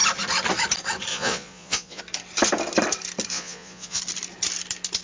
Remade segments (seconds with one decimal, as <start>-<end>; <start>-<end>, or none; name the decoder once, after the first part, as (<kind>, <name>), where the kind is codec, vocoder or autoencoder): 1.1-2.0 (vocoder, Vocos); 3.3-4.0